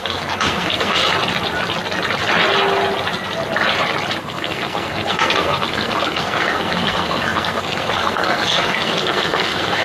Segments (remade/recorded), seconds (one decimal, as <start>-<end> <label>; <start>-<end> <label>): 0.0-1.0 remade; 1.0-4.2 recorded; 4.2-9.8 remade